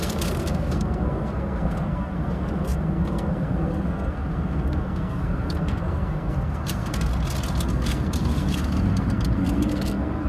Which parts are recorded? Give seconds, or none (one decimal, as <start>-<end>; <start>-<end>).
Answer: 7.1-7.7